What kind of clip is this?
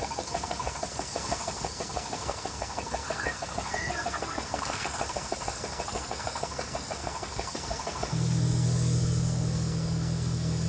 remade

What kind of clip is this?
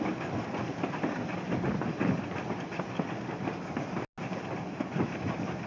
recorded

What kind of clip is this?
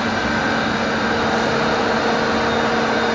recorded